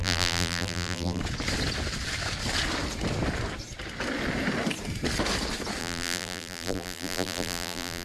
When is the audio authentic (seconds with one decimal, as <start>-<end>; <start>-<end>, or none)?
1.2-5.8